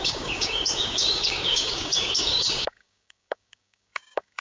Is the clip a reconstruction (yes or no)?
yes